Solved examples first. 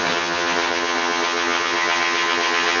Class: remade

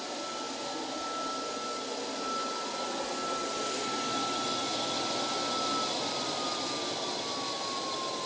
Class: recorded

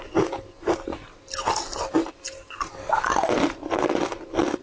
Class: recorded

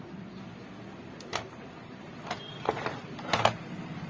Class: recorded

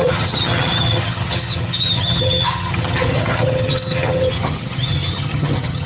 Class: remade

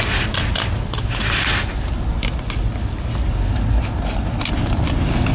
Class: recorded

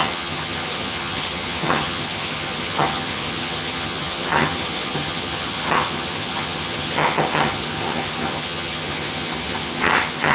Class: remade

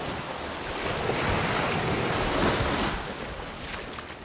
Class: recorded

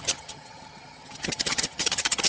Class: remade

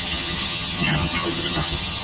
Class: remade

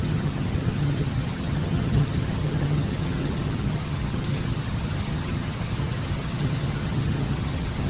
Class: remade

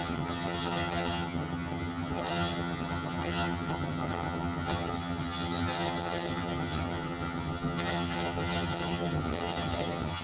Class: remade